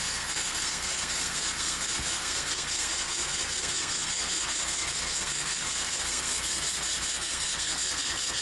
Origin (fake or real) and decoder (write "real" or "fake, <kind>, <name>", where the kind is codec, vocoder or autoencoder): fake, codec, SNAC